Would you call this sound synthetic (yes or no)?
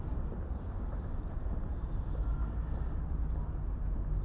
no